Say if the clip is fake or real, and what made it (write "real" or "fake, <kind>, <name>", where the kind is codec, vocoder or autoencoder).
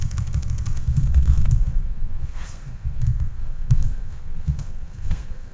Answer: fake, codec, SNAC